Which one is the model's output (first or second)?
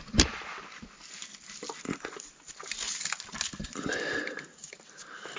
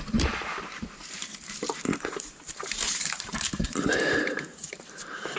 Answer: second